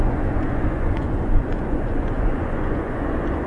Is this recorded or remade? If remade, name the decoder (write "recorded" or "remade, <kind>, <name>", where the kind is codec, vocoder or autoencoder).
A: remade, vocoder, Vocos